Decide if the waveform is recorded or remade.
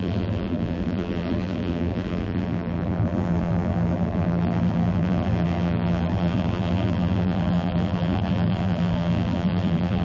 remade